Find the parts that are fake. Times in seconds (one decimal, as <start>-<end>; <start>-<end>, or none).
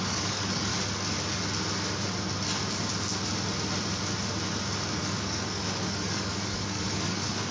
0.0-0.7; 5.0-7.5